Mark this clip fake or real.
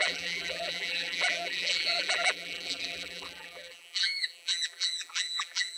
fake